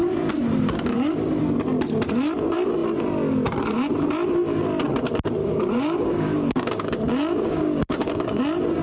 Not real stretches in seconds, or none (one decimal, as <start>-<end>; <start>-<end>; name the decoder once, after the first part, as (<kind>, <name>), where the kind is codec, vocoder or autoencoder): 0.0-1.4 (codec, DAC); 5.4-8.4